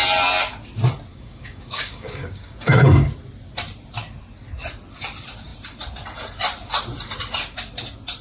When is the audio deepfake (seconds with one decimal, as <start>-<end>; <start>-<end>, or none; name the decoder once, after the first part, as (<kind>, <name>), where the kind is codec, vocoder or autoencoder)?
1.1-2.8 (codec, DAC)